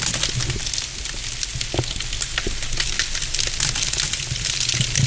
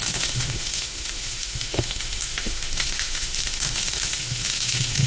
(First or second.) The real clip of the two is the first